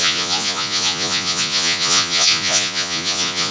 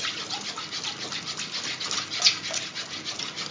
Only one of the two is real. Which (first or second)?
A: second